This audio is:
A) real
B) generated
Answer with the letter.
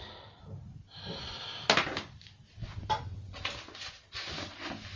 A